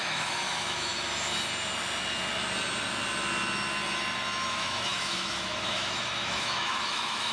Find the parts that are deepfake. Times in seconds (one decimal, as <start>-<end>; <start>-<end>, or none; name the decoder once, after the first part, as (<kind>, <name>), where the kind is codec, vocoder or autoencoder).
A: 0.0-0.9 (autoencoder, DAC-VAE); 4.5-7.3